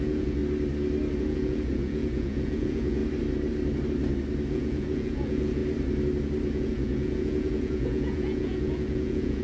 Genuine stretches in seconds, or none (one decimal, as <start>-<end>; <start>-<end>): 0.4-1.2; 3.0-4.5; 5.6-6.5

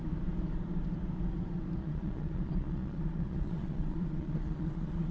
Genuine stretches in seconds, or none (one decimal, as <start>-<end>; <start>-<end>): 0.0-1.8

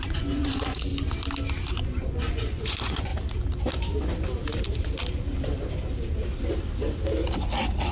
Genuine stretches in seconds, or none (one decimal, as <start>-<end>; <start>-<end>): 0.9-1.7; 3.1-7.9

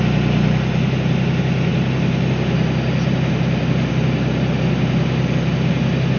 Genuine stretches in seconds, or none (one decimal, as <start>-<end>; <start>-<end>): 0.0-6.2

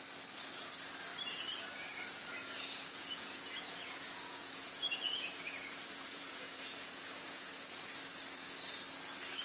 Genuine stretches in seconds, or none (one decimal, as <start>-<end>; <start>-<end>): 0.0-2.4; 7.5-9.4

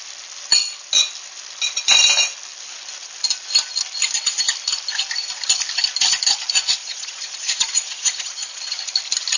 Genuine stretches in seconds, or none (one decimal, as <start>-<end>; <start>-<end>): 0.0-6.8; 8.8-9.4

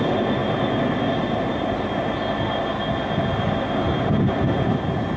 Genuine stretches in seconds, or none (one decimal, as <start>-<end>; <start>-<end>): 0.0-5.2

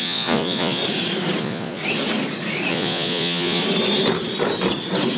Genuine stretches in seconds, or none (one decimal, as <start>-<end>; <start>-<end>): 0.8-1.4; 1.8-2.7; 3.6-5.2